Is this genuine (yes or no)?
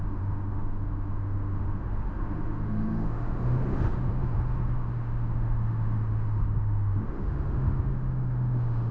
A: no